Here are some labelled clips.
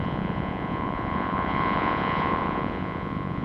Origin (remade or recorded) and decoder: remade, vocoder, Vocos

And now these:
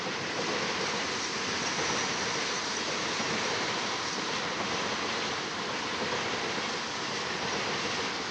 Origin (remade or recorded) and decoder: recorded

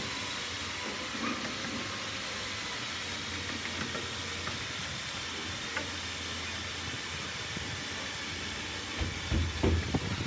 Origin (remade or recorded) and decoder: recorded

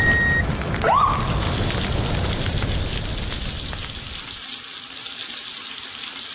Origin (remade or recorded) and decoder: recorded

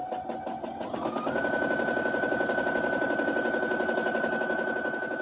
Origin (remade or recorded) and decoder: recorded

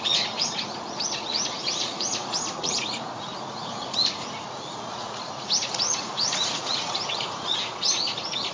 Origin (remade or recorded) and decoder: remade, vocoder, Vocos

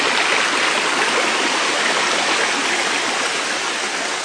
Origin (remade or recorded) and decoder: recorded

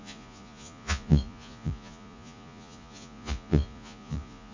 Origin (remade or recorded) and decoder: remade, vocoder, Vocos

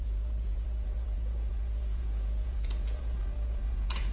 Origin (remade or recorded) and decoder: remade, vocoder, Vocos